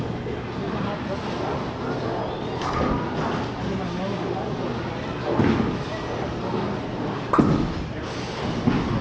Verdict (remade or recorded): recorded